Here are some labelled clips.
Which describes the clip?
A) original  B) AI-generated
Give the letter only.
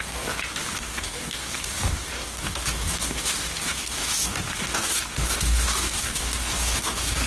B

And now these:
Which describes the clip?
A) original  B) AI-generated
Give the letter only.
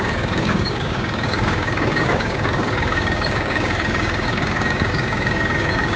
B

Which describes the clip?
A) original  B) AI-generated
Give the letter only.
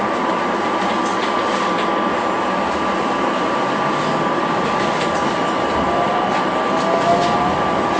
A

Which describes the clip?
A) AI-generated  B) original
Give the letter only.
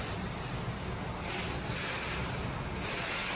B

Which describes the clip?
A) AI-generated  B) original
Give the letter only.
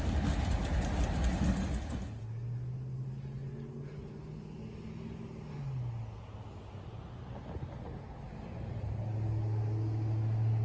B